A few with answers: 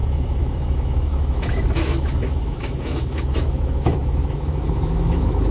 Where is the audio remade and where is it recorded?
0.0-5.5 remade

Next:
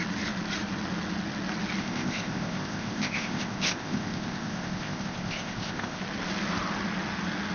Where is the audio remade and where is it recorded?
0.0-1.8 recorded; 1.8-6.0 remade; 6.0-7.5 recorded

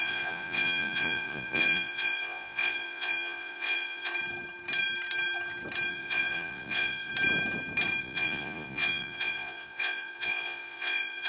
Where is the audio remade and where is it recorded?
0.0-4.1 remade; 4.1-5.9 recorded; 5.9-7.1 remade; 7.1-8.0 recorded; 8.0-11.3 remade